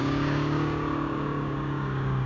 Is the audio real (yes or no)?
no